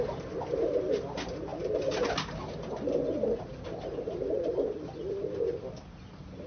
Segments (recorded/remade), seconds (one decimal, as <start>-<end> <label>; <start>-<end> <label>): 0.0-6.5 recorded